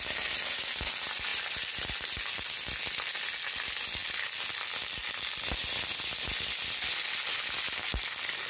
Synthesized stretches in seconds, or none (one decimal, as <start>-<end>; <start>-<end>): none